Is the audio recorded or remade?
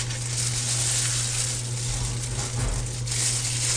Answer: recorded